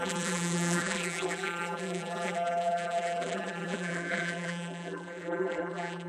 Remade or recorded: remade